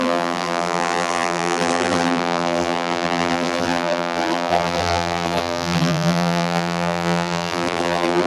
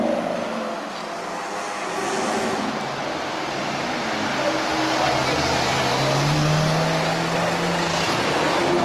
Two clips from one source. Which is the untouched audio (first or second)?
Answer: second